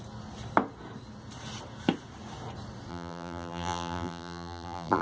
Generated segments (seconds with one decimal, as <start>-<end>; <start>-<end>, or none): 2.9-5.0